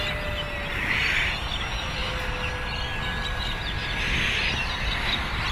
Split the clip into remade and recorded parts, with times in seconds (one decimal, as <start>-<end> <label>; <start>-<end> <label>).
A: 0.0-5.5 recorded